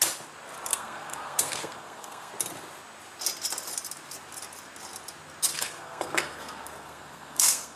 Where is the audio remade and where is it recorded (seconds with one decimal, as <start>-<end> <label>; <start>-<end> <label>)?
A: 0.0-0.7 recorded; 0.7-2.3 remade; 2.3-5.5 recorded; 5.5-7.8 remade